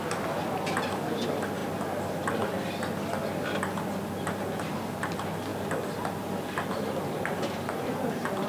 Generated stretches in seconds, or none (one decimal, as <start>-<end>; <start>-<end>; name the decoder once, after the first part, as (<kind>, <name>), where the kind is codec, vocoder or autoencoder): none